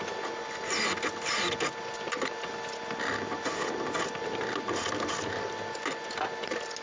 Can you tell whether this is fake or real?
real